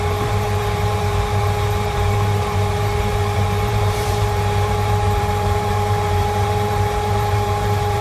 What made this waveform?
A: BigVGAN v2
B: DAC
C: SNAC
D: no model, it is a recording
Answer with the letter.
A